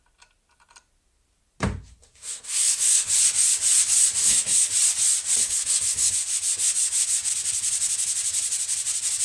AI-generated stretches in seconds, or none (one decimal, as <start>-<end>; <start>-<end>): 2.0-3.1; 4.2-4.7; 5.4-6.1